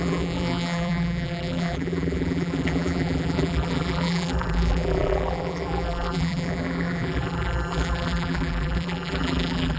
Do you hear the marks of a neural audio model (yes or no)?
yes